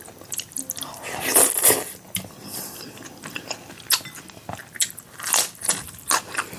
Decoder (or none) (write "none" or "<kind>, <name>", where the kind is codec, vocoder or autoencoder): none